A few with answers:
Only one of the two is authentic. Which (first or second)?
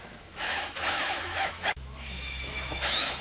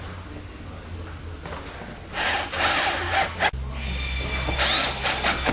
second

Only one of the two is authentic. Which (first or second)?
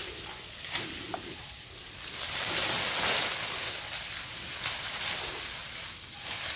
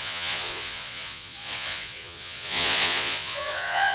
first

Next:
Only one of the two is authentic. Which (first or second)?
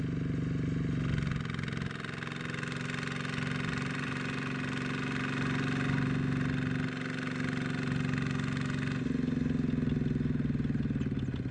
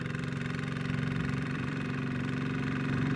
first